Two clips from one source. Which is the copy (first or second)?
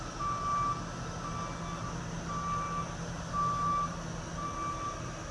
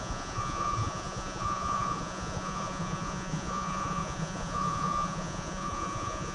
second